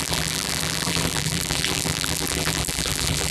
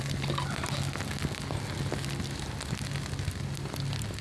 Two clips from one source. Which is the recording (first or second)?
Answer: second